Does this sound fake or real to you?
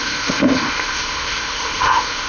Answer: fake